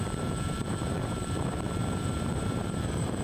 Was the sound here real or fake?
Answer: fake